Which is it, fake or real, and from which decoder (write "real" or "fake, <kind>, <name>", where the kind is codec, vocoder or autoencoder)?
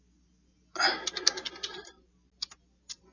real